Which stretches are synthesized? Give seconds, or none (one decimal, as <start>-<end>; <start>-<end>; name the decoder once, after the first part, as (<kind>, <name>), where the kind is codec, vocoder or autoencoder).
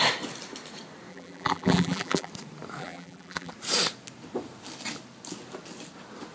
1.1-2.3 (vocoder, BigVGAN v2); 2.8-3.5